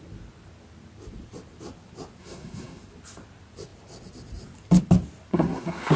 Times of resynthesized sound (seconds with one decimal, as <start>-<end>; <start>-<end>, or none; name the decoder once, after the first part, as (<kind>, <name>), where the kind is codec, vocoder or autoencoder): 2.2-2.8 (codec, SNAC); 5.3-6.0